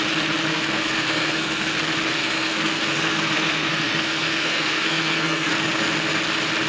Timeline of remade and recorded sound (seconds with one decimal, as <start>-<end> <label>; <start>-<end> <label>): 0.0-0.5 recorded; 0.5-1.7 remade; 1.7-2.1 recorded; 2.1-5.5 remade; 5.5-6.7 recorded